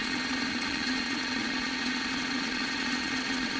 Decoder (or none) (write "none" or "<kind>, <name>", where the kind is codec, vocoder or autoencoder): vocoder, Vocos